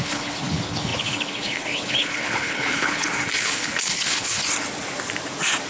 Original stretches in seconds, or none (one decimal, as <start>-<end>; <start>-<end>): 4.4-5.7